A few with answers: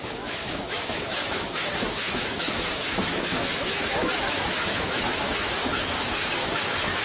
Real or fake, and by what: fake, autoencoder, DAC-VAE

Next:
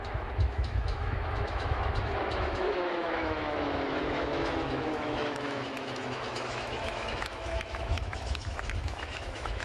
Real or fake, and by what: fake, autoencoder, DAC-VAE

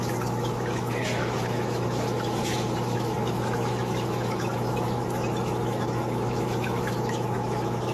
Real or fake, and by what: fake, autoencoder, DAC-VAE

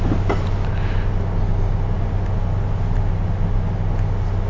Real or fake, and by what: real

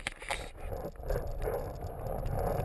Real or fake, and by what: real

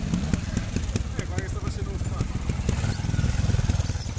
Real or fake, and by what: real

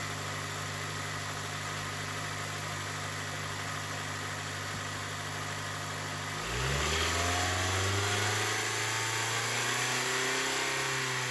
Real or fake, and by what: real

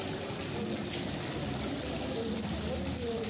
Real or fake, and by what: real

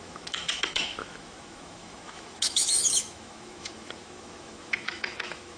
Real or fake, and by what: fake, autoencoder, DAC-VAE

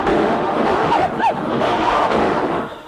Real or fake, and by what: fake, autoencoder, DAC-VAE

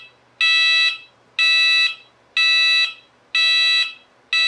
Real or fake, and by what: real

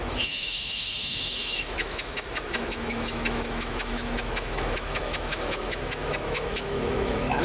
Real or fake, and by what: fake, autoencoder, DAC-VAE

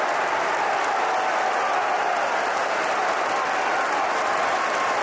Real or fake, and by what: real